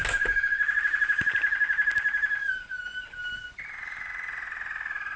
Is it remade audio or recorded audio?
recorded